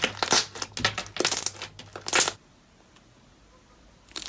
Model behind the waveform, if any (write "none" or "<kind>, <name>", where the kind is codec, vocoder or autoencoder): none